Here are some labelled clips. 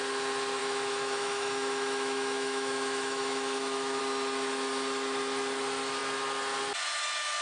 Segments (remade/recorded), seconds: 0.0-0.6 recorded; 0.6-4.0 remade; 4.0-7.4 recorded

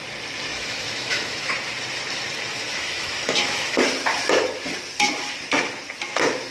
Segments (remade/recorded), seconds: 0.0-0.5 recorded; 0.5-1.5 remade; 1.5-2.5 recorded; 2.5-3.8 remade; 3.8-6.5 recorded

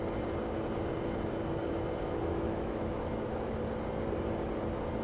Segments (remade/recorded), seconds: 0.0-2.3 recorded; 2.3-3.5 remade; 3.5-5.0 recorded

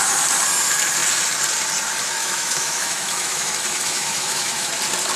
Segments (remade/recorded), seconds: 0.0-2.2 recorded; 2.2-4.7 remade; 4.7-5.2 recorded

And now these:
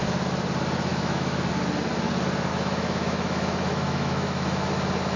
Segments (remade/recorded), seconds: 0.0-0.9 recorded; 0.9-1.5 remade; 1.5-2.5 recorded; 2.5-4.7 remade; 4.7-5.2 recorded